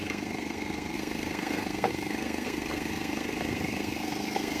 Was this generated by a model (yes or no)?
yes